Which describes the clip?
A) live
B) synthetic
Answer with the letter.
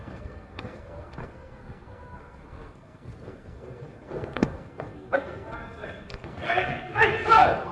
B